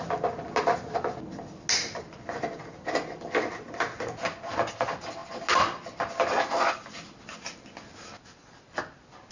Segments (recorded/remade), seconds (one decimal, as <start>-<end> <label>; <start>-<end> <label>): 0.0-9.3 recorded